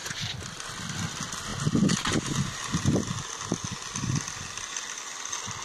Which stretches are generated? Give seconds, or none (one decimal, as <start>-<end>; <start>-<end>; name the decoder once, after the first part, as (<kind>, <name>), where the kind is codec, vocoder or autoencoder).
0.0-0.6 (vocoder, BigVGAN v2)